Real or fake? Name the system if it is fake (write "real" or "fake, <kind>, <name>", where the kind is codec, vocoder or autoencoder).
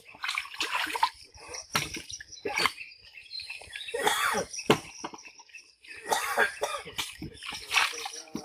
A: fake, vocoder, BigVGAN v2